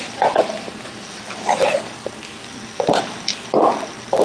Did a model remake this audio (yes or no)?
no